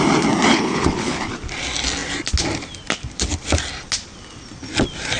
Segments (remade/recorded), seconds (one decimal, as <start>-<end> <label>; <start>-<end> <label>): 0.0-0.5 recorded; 0.5-1.3 remade; 1.3-5.2 recorded